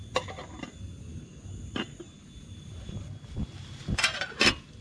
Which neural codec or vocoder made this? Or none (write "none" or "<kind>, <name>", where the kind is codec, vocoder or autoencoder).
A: none